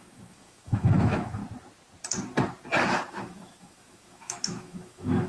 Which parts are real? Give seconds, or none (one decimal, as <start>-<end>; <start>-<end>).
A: 1.4-3.1